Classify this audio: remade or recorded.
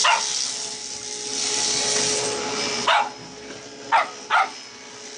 recorded